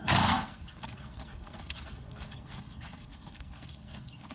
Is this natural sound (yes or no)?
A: no